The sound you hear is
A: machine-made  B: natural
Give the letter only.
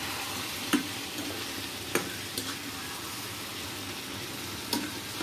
B